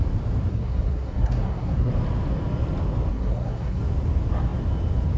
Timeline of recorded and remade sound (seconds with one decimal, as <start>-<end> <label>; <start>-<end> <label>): 0.0-0.5 recorded; 0.5-1.9 remade; 1.9-3.1 recorded; 3.1-3.8 remade; 3.8-5.2 recorded